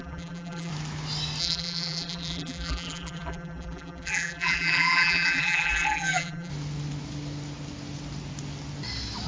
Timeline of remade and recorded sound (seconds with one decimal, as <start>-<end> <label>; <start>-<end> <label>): 0.0-0.7 remade; 0.7-1.4 recorded; 1.4-6.5 remade; 6.5-9.3 recorded